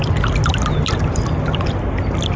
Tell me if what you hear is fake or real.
real